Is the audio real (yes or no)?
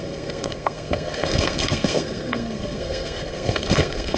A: no